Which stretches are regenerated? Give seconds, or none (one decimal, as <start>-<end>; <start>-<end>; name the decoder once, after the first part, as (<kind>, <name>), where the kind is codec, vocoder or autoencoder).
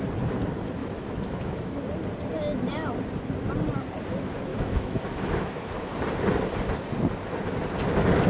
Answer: 0.8-1.8 (autoencoder, DAC-VAE); 4.5-5.9